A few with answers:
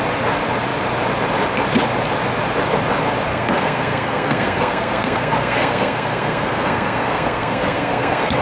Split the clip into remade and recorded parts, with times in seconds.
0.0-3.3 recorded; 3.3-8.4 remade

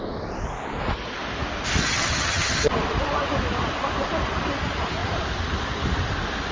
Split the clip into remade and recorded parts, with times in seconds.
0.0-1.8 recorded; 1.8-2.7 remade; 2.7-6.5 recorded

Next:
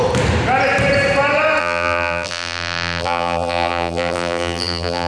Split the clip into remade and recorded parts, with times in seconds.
0.0-1.6 recorded; 1.6-5.1 remade

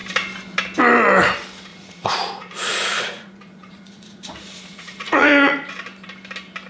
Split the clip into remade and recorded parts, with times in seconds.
0.0-1.7 recorded; 1.7-5.7 remade; 5.7-6.7 recorded

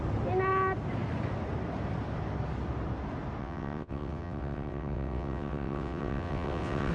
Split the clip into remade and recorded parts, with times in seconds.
0.0-3.4 recorded; 3.4-6.9 remade

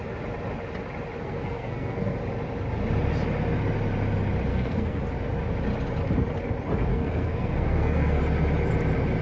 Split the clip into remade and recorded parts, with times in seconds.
0.0-1.2 recorded; 1.2-2.2 remade; 2.2-4.5 recorded; 4.5-5.0 remade; 5.0-6.9 recorded; 6.9-8.2 remade; 8.2-9.2 recorded

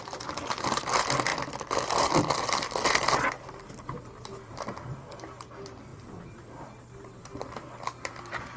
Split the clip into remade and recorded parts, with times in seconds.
0.0-1.3 remade; 1.3-2.1 recorded; 2.1-8.6 remade